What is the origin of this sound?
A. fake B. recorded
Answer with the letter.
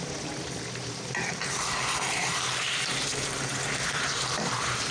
A